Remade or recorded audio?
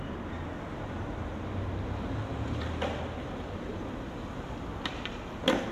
recorded